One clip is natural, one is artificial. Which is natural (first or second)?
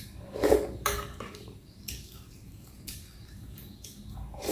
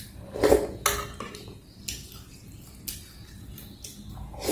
second